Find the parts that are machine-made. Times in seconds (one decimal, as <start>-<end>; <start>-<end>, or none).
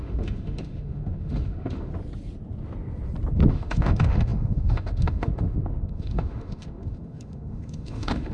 0.0-1.9; 3.5-8.3